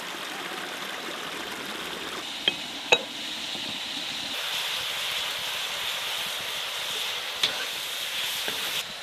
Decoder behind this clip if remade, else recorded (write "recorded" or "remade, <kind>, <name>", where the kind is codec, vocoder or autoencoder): recorded